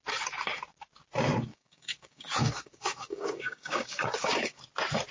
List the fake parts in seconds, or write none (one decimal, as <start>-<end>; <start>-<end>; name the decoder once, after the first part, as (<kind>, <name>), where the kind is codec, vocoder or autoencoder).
1.5-4.6 (codec, DAC)